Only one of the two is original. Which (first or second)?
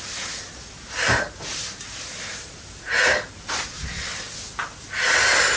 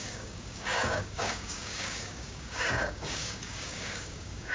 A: first